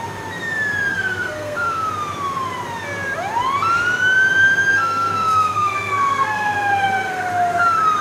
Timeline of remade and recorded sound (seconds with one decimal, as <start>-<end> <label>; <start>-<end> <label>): 0.0-0.9 recorded; 0.9-1.9 remade; 1.9-4.7 recorded; 4.7-7.3 remade; 7.3-8.0 recorded